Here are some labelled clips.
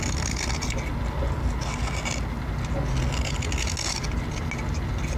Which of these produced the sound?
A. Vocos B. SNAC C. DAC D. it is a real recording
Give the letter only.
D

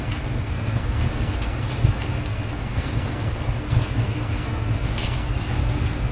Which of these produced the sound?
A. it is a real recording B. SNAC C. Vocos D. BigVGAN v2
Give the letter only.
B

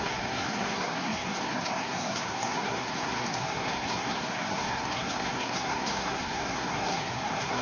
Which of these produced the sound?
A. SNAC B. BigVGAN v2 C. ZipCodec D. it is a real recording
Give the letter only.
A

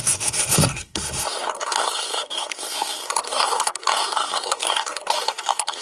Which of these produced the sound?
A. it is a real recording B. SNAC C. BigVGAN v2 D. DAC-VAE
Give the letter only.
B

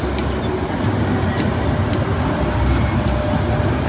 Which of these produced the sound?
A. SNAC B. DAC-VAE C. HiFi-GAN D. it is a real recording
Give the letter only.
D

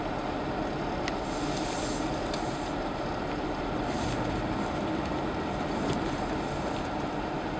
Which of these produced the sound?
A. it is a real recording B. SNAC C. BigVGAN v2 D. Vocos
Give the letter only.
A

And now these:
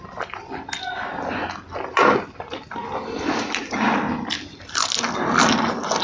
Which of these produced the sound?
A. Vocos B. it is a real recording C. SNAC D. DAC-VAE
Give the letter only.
B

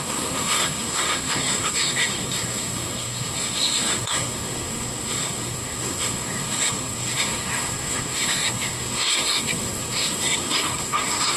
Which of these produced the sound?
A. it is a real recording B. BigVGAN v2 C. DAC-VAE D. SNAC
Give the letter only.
D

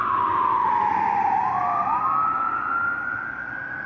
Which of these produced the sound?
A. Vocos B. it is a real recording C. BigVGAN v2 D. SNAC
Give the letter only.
B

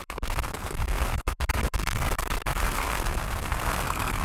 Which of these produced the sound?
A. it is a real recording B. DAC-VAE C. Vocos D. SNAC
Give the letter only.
D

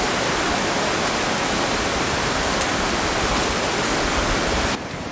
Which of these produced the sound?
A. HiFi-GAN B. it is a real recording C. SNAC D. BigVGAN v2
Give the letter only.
B